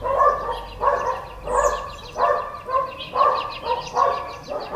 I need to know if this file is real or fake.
real